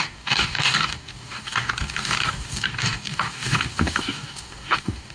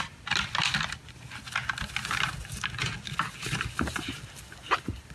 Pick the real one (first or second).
second